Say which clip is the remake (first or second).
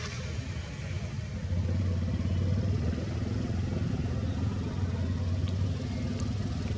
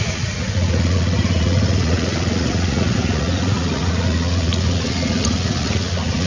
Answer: second